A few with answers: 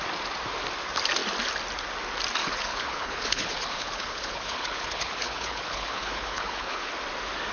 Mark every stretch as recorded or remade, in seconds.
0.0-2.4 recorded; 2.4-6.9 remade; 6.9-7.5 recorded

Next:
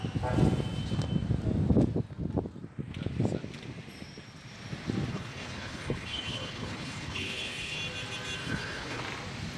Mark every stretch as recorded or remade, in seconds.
0.0-5.1 recorded; 5.1-7.8 remade; 7.8-8.4 recorded; 8.4-9.0 remade; 9.0-9.6 recorded